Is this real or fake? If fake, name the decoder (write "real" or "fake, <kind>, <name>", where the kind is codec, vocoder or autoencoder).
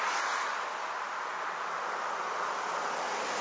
real